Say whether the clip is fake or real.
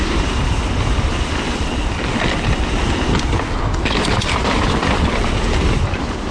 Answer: real